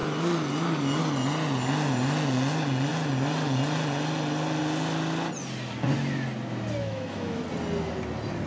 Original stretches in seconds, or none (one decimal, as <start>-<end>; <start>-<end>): 0.0-6.8; 7.4-8.5